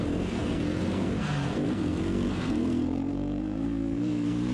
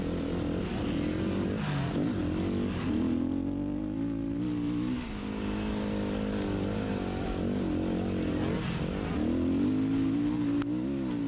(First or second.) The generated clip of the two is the first